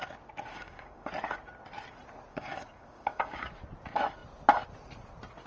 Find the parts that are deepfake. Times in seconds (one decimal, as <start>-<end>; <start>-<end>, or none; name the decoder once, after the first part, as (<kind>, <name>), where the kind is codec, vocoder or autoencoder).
0.5-1.1 (codec, DAC); 2.3-3.5